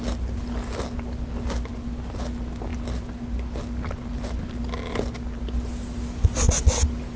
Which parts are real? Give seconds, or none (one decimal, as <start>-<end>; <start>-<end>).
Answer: 0.0-7.2